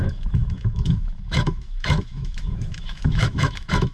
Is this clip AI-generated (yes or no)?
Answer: yes